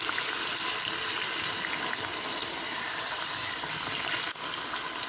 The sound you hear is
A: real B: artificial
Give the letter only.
A